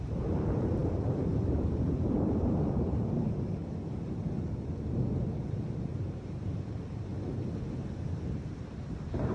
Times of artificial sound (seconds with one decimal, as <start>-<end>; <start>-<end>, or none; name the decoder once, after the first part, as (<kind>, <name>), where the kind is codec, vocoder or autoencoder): 0.0-3.6 (vocoder, BigVGAN v2); 5.6-7.1; 8.3-9.3